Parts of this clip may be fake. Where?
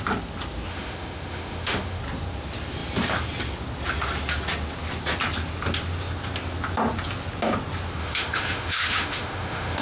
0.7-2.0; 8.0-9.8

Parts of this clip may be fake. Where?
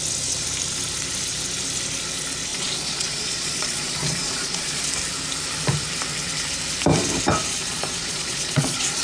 2.5-4.8; 7.5-9.0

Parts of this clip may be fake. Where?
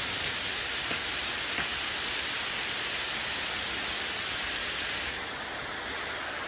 none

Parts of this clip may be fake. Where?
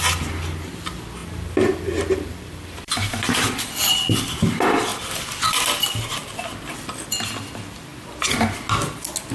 0.0-4.9; 5.6-6.2; 6.7-7.9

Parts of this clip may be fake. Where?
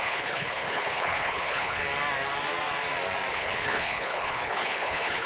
0.0-1.8; 3.3-5.3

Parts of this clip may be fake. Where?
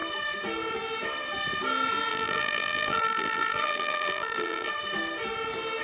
2.1-4.7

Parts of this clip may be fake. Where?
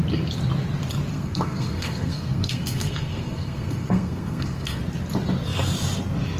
1.1-4.8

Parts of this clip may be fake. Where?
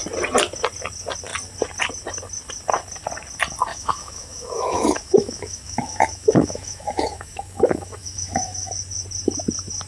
3.7-8.7